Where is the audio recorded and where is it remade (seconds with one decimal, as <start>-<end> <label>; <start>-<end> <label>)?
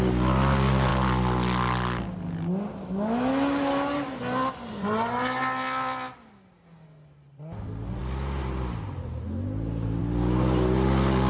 0.0-11.3 recorded